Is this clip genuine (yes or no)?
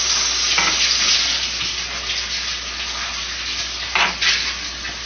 yes